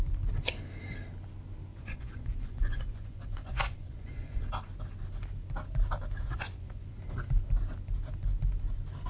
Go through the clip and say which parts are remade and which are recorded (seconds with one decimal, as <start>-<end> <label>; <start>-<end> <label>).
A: 0.0-1.7 recorded; 1.7-4.4 remade; 4.4-6.2 recorded; 6.2-7.0 remade; 7.0-9.1 recorded